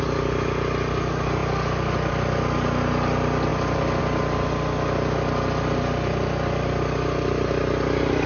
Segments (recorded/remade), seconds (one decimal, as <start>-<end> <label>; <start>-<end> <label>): 0.0-8.3 recorded